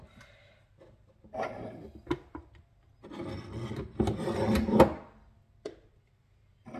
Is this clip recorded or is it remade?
recorded